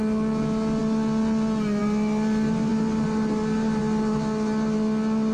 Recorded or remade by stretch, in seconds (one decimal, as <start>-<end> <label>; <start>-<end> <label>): 0.0-5.3 recorded